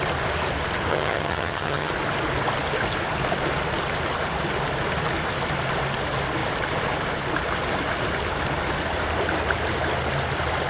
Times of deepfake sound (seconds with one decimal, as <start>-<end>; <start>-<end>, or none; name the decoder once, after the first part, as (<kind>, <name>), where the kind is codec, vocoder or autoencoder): 0.9-1.9 (vocoder, HiFi-GAN)